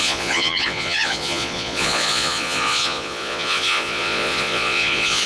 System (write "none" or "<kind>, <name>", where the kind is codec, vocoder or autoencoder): vocoder, Vocos